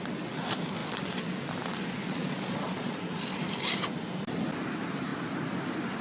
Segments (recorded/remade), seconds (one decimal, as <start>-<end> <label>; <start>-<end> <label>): 0.0-2.1 recorded; 2.1-2.9 remade; 2.9-6.0 recorded